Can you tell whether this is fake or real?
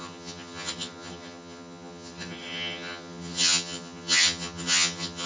fake